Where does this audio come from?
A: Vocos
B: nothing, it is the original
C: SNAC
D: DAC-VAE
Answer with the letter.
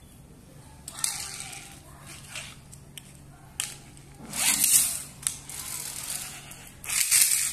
B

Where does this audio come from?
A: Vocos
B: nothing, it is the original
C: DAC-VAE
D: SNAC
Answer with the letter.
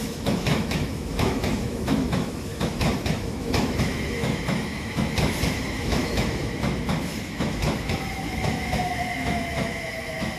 C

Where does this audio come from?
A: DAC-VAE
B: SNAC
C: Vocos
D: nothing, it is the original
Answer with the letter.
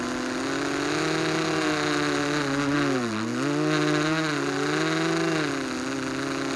D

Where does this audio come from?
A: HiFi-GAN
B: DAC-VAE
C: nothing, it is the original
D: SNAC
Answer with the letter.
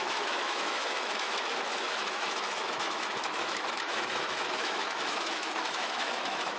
B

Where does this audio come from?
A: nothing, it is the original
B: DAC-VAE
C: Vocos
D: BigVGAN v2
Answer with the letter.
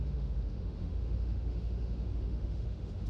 B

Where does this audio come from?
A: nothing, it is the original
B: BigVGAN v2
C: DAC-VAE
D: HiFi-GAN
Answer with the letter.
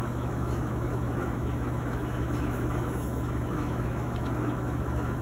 C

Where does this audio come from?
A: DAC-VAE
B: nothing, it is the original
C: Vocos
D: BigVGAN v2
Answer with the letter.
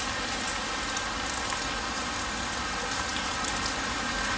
B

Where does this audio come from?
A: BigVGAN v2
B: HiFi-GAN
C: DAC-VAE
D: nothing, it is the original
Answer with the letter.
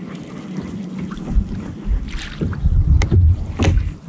D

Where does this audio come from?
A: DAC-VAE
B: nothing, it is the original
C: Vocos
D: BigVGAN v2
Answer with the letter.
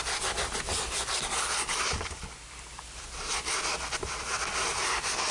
B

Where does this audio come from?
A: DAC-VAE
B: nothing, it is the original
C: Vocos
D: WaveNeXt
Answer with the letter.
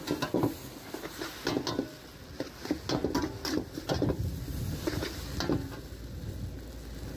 B